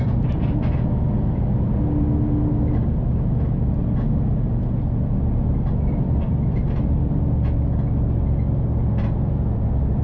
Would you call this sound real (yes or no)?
yes